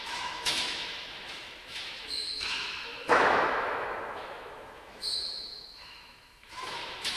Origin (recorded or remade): remade